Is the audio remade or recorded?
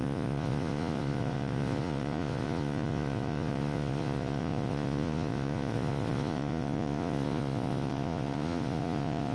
remade